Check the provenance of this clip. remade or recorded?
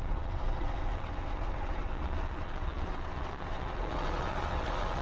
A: remade